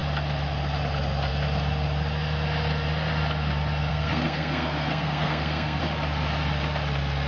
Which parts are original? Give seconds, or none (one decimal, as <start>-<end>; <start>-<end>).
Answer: 0.0-3.9; 5.8-7.3

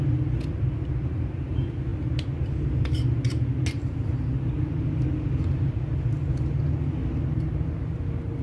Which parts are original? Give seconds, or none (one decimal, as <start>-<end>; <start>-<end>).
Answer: 0.0-8.4

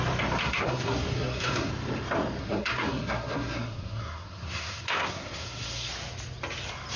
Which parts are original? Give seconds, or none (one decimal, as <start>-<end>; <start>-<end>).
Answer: 0.0-0.4; 1.7-2.4; 5.9-7.0

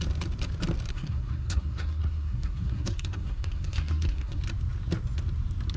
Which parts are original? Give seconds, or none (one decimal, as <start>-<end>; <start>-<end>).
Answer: 0.0-0.9; 4.4-5.8

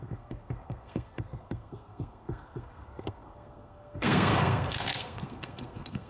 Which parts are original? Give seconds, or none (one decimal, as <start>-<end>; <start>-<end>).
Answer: none

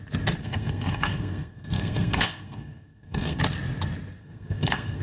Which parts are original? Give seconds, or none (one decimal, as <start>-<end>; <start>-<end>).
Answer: 0.0-0.4; 3.4-4.2

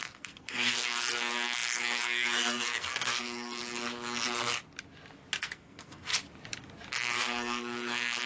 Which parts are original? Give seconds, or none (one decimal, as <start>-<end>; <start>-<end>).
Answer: 3.6-5.4; 6.1-6.9

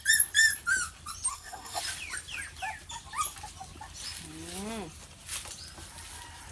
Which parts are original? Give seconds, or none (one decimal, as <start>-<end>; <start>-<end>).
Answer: 0.0-1.3; 1.8-6.5